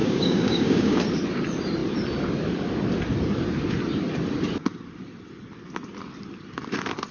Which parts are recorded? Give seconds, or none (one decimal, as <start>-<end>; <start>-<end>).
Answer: 1.0-7.1